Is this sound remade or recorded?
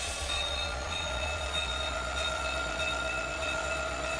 remade